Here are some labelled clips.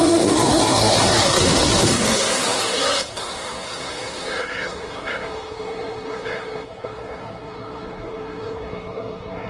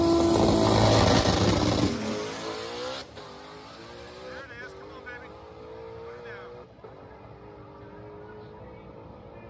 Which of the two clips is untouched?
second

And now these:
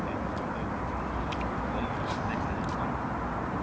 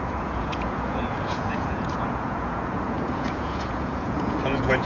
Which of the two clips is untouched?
first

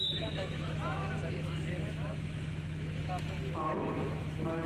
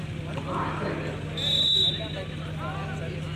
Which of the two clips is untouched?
second